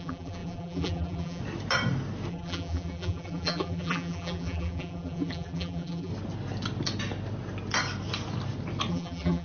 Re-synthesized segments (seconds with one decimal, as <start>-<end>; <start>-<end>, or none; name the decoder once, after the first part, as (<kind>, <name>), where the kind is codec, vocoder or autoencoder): 0.0-1.4 (vocoder, BigVGAN v2); 2.3-6.1; 8.9-9.4